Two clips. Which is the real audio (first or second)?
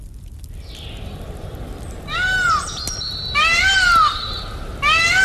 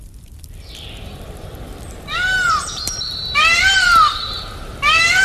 first